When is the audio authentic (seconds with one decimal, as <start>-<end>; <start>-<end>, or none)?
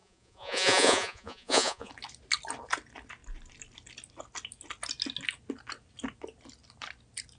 1.9-7.4